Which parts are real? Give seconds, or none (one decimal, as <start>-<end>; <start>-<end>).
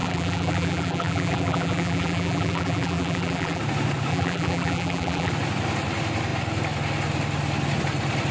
3.6-4.1; 5.3-8.3